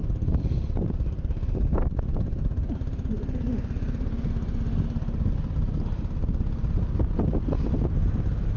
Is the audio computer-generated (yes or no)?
no